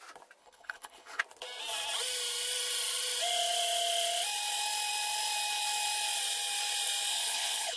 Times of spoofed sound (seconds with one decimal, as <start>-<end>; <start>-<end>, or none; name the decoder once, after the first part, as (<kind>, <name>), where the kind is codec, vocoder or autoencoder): 0.4-1.2 (codec, HILCodec); 7.1-7.8

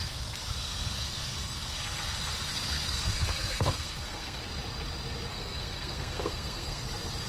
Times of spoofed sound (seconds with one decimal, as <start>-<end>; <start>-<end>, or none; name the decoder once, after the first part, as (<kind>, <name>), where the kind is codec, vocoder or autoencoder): 0.0-4.4 (codec, SNAC); 5.3-6.8